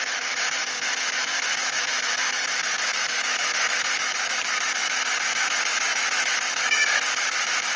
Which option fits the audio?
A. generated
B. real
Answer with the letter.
A